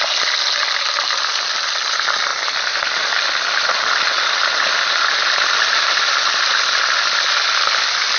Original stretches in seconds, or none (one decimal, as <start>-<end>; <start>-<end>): 0.0-8.2